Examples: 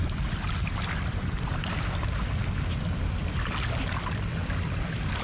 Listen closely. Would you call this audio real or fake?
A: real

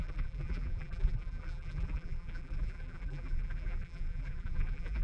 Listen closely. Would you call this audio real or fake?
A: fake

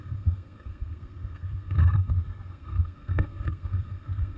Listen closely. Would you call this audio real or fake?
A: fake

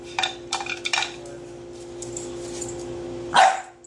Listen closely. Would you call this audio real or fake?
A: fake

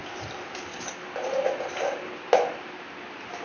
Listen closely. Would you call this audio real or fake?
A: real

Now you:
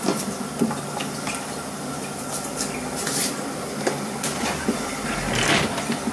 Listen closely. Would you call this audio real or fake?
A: real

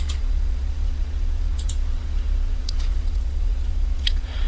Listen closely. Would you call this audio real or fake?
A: fake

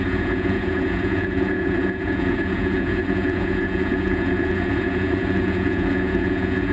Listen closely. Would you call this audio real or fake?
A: fake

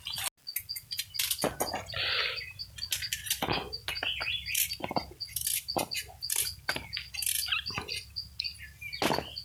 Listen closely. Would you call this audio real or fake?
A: real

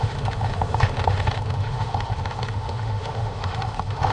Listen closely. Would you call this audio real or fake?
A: fake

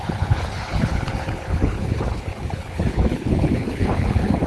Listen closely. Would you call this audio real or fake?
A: fake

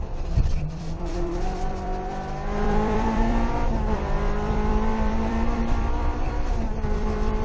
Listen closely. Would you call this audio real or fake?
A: fake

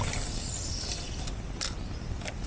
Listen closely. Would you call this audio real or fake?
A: real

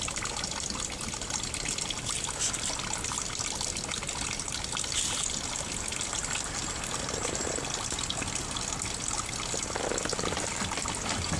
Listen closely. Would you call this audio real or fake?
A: real